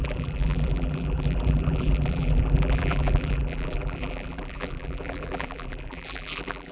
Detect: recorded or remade remade